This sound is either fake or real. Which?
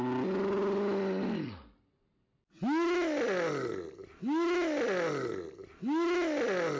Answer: real